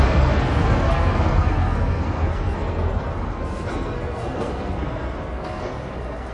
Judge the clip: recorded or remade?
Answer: remade